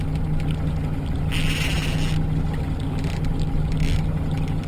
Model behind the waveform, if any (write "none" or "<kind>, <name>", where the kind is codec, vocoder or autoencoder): none